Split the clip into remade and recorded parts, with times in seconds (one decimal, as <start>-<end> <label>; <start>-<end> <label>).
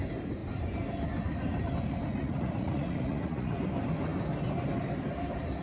0.0-2.2 recorded; 2.2-3.6 remade; 3.6-5.6 recorded